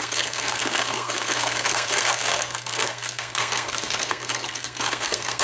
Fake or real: fake